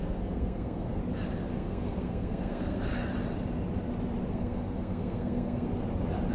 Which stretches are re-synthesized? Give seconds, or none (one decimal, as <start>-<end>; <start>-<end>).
0.0-1.0; 1.5-2.9; 4.3-5.7